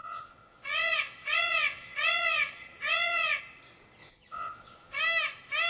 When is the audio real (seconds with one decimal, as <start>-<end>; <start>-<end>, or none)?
3.4-4.0; 5.0-5.7